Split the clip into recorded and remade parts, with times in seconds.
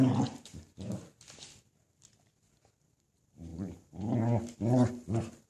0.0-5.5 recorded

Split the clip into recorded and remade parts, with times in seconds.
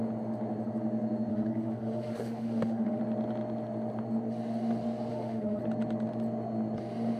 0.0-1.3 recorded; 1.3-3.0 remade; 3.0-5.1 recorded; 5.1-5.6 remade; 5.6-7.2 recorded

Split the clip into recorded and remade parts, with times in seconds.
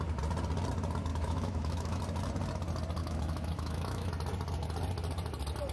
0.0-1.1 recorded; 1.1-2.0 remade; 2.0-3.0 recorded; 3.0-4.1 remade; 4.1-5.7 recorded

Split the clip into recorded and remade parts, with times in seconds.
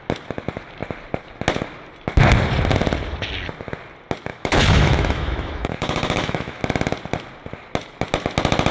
0.0-4.3 recorded; 4.3-6.6 remade; 6.6-8.7 recorded